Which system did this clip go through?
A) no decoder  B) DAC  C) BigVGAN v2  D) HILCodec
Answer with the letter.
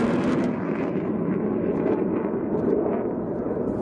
A